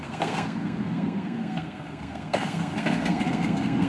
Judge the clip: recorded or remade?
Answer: remade